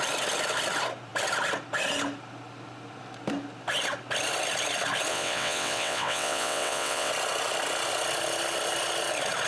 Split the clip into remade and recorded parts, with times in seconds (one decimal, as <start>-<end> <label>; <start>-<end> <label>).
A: 0.0-5.1 recorded; 5.1-7.1 remade; 7.1-9.5 recorded